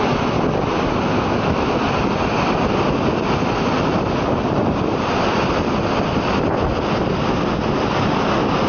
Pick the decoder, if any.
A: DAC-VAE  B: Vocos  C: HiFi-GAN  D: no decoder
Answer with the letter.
D